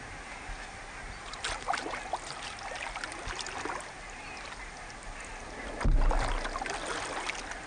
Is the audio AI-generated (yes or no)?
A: no